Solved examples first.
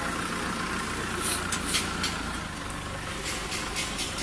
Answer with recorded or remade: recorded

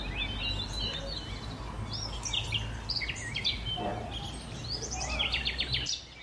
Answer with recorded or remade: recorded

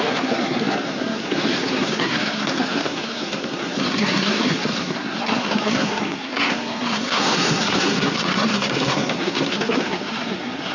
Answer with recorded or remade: remade